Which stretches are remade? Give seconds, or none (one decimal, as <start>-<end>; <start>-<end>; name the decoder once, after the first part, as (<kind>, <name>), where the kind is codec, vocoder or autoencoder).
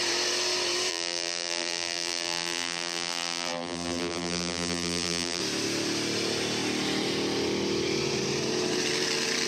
0.9-5.4 (vocoder, BigVGAN v2)